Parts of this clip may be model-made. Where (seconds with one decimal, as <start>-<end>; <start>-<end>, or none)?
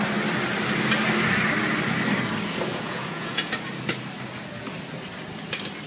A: 2.7-3.5